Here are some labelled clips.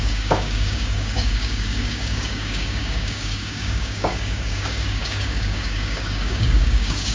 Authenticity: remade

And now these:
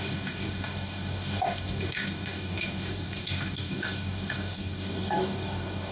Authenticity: remade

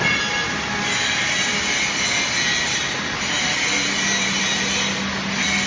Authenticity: recorded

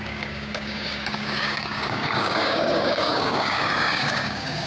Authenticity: remade